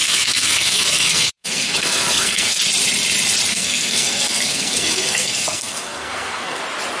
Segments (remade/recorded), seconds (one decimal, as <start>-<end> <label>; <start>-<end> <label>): 0.0-2.6 remade; 2.6-3.5 recorded; 3.5-6.6 remade; 6.6-7.0 recorded